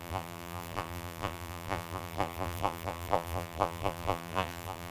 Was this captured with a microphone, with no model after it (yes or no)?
no